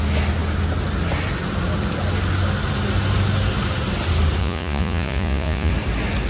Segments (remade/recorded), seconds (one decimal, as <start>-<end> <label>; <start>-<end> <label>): 0.0-4.4 recorded; 4.4-5.7 remade; 5.7-6.3 recorded

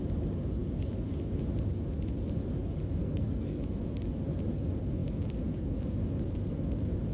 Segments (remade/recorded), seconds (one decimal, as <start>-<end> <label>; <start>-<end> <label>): 0.0-3.0 recorded; 3.0-3.6 remade; 3.6-7.1 recorded

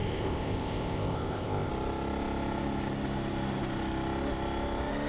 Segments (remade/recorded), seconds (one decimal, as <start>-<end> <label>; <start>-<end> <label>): 0.0-1.7 remade; 1.7-5.1 recorded

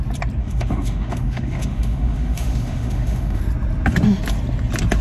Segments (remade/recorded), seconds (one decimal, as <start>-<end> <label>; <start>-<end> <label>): 0.0-0.4 recorded; 0.4-3.4 remade; 3.4-5.0 recorded

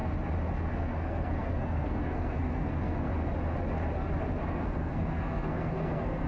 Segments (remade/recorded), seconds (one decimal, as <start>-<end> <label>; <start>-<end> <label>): 0.0-0.7 recorded; 0.7-3.1 remade; 3.1-4.4 recorded; 4.4-6.3 remade

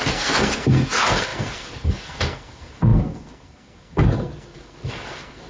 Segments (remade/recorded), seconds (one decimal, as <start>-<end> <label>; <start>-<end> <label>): 0.0-5.5 remade

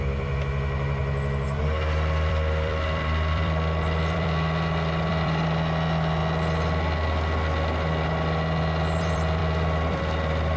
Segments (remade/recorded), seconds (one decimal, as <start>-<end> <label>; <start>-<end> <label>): 0.0-1.0 remade; 1.0-1.6 recorded; 1.6-6.2 remade; 6.2-7.9 recorded; 7.9-10.6 remade

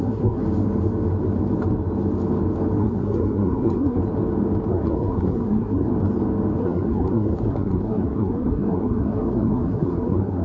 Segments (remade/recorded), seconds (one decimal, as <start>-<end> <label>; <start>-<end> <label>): 0.0-0.4 remade; 0.4-2.8 recorded; 2.8-4.0 remade; 4.0-4.7 recorded; 4.7-5.9 remade; 5.9-6.6 recorded; 6.6-10.4 remade